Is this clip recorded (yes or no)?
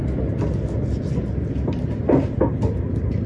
yes